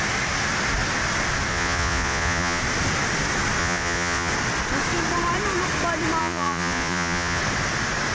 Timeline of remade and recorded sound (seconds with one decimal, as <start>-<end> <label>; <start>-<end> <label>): 0.0-1.5 recorded; 1.5-2.6 remade; 2.6-3.6 recorded; 3.6-4.3 remade; 4.3-6.2 recorded; 6.2-7.4 remade; 7.4-8.1 recorded